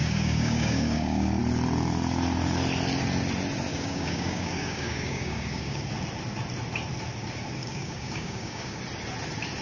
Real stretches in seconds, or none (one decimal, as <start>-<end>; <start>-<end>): 1.4-3.7; 5.8-7.6; 8.8-9.6